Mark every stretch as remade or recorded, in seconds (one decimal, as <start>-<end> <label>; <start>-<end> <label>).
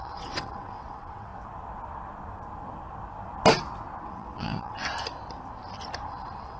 0.0-1.3 remade; 1.3-4.1 recorded; 4.1-4.8 remade; 4.8-6.1 recorded; 6.1-6.6 remade